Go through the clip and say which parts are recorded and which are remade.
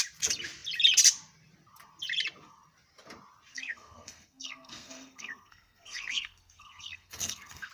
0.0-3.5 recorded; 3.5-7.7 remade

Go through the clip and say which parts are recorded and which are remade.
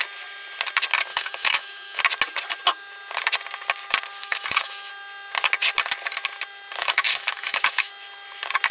0.0-1.1 recorded; 1.1-2.0 remade; 2.0-4.2 recorded; 4.2-4.9 remade; 4.9-6.8 recorded; 6.8-7.9 remade; 7.9-8.7 recorded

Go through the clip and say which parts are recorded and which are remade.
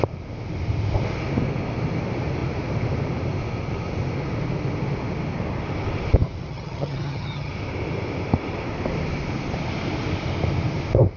0.0-6.5 recorded; 6.5-7.5 remade; 7.5-11.2 recorded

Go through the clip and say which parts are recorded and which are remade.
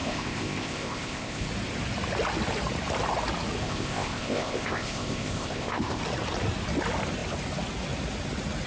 0.0-1.5 remade; 1.5-3.6 recorded; 3.6-6.0 remade; 6.0-8.7 recorded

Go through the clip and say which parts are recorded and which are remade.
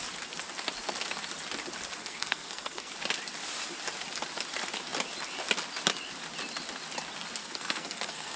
0.0-2.0 recorded; 2.0-2.9 remade; 2.9-7.4 recorded; 7.4-8.4 remade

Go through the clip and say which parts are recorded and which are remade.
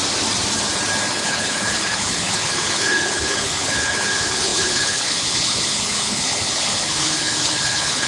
0.0-1.1 recorded; 1.1-8.1 remade